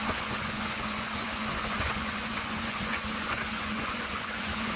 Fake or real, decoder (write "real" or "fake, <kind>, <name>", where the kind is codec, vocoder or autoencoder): fake, vocoder, Vocos